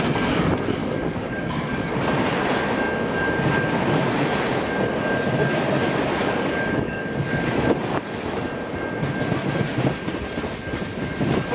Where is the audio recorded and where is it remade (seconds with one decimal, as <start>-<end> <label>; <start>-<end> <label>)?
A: 0.0-0.8 recorded; 0.8-2.1 remade; 2.1-6.2 recorded; 6.2-7.4 remade; 7.4-11.5 recorded